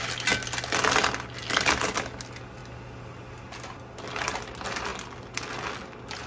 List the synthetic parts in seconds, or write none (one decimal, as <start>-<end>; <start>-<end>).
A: none